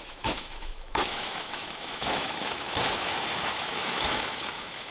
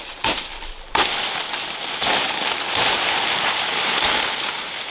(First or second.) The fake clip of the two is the first